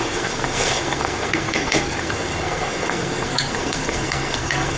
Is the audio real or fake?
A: fake